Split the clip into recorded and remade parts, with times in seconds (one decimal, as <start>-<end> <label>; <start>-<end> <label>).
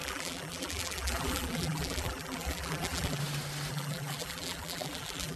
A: 0.0-3.2 remade; 3.2-3.7 recorded; 3.7-5.4 remade